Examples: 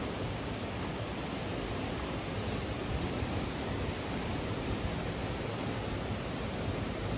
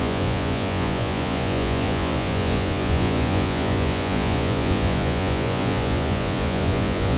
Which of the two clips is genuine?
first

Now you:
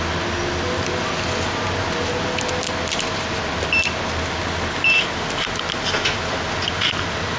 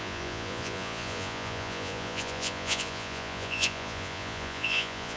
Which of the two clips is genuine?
first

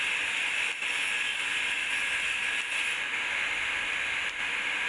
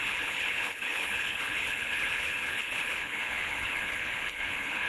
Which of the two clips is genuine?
first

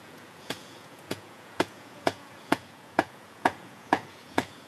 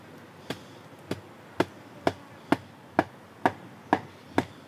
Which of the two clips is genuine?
second